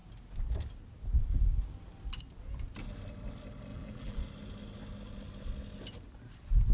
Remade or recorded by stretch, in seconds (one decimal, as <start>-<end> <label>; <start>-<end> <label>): 0.0-3.7 recorded; 3.7-4.2 remade; 4.2-6.7 recorded